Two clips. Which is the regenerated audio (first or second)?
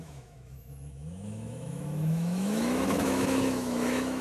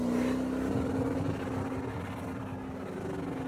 first